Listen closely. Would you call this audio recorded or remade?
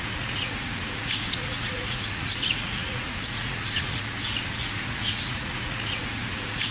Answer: remade